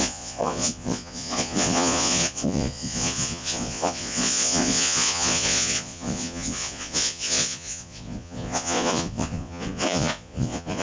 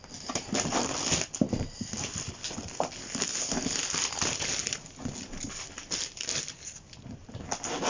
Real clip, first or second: second